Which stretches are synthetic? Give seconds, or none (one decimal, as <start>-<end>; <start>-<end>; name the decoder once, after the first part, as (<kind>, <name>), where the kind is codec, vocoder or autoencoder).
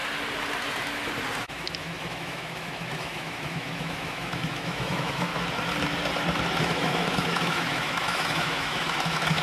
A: 1.4-5.3 (autoencoder, DAC-VAE); 6.6-9.4